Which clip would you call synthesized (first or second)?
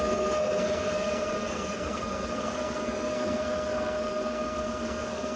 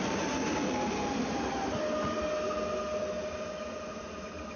first